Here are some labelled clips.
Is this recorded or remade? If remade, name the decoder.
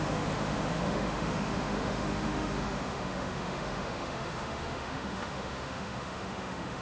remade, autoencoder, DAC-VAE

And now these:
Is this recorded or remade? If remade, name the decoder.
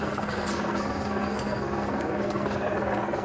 remade, codec, SNAC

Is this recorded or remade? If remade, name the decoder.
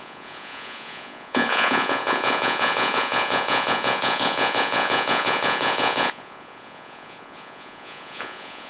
remade, vocoder, Vocos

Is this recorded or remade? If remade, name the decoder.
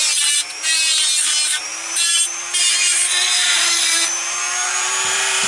remade, vocoder, BigVGAN v2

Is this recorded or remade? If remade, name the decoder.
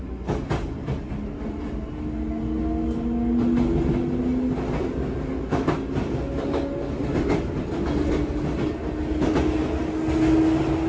recorded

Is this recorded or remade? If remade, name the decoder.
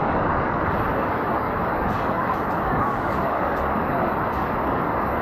remade, codec, DAC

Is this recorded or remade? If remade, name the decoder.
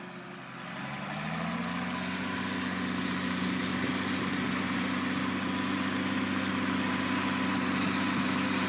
recorded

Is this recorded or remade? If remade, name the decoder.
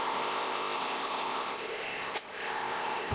remade, codec, ZipCodec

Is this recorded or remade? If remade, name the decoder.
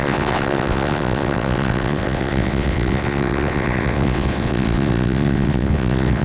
remade, vocoder, WaveNeXt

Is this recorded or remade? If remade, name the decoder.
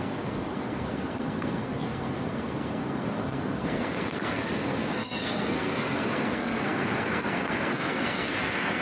remade, codec, SNAC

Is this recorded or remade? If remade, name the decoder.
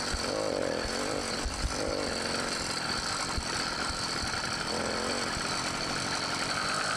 recorded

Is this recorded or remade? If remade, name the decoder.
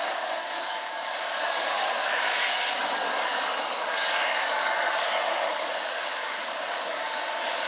remade, codec, DAC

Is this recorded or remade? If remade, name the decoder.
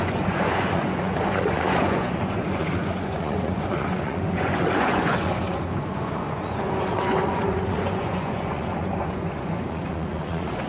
remade, vocoder, Vocos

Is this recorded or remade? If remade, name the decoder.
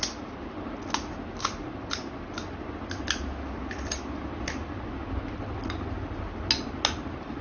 recorded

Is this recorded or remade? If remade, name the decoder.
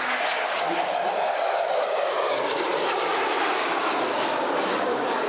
remade, codec, DAC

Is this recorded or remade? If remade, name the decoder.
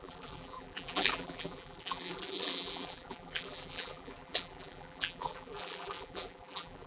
remade, vocoder, BigVGAN v2